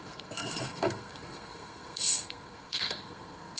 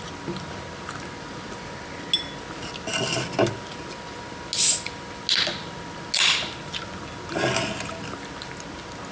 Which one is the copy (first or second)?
first